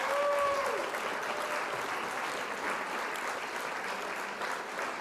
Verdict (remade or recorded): recorded